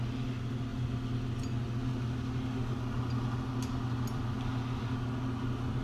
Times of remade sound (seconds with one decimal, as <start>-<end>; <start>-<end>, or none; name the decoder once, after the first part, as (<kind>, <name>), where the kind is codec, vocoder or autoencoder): none